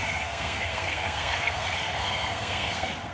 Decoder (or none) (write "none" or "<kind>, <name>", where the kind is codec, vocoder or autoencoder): codec, SNAC